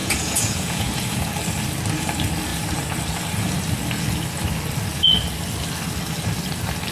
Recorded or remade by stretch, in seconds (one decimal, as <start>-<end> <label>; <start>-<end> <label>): 0.0-1.2 remade; 1.2-6.9 recorded

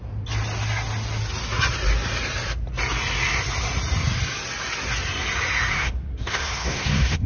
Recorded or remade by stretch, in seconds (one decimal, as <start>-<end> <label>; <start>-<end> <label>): 0.0-5.7 recorded; 5.7-7.3 remade

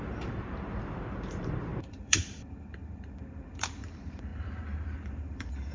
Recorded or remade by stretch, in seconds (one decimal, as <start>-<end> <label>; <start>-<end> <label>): 0.0-5.7 remade

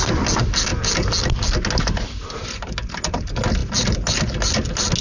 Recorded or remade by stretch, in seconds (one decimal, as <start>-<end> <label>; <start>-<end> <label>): 0.0-5.0 recorded

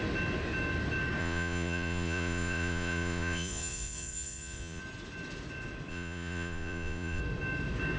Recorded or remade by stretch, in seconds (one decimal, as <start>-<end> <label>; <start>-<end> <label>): 0.0-1.2 recorded; 1.2-4.8 remade; 4.8-5.9 recorded; 5.9-7.2 remade; 7.2-8.0 recorded